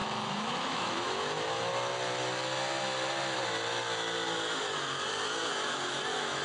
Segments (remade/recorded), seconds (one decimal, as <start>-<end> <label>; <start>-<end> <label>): 0.0-1.7 remade; 1.7-5.5 recorded; 5.5-6.4 remade

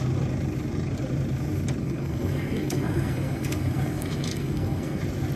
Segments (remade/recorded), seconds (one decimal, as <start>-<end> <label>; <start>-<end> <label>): 0.0-1.8 recorded; 1.8-5.0 remade; 5.0-5.4 recorded

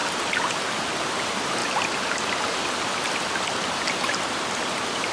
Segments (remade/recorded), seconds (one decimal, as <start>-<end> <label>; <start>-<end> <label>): 0.0-5.1 recorded